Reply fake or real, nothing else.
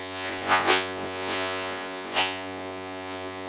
fake